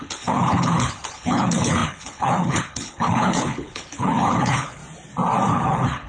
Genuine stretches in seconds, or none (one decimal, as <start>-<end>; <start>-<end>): 4.8-5.5